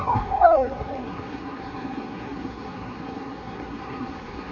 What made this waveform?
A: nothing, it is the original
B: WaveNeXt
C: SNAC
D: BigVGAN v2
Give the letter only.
C